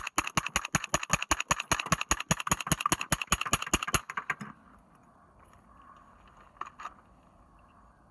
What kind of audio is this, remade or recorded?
recorded